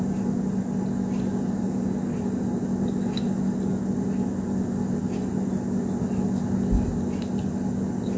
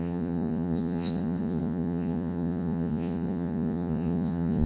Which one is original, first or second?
first